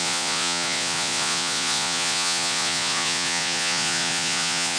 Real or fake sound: fake